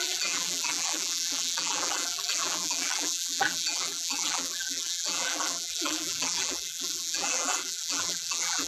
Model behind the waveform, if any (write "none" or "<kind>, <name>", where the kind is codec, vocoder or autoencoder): vocoder, BigVGAN v2